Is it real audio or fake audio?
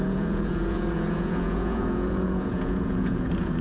fake